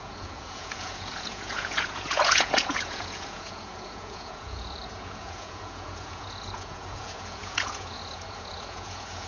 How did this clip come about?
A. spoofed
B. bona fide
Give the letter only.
A